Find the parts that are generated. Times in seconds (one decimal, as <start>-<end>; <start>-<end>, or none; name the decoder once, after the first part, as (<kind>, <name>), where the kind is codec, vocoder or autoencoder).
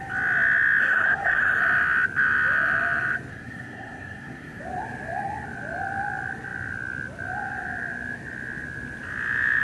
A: 0.8-1.6 (codec, SNAC); 3.3-4.6